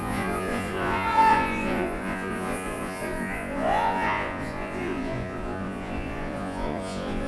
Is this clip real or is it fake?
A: fake